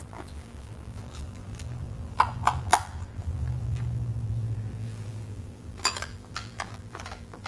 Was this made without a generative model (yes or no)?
no